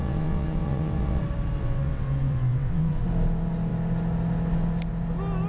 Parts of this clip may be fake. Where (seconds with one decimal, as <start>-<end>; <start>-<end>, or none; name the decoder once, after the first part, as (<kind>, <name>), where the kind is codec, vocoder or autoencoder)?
0.0-1.2 (vocoder, WaveNeXt); 1.6-3.0